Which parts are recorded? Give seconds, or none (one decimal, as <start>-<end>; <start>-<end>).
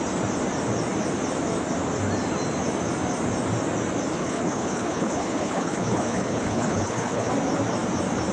0.0-4.2; 7.3-8.3